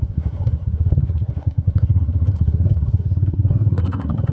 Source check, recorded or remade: remade